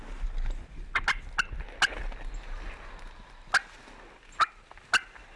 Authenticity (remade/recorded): recorded